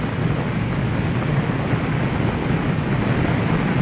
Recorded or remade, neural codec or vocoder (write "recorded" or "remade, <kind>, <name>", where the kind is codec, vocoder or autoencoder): recorded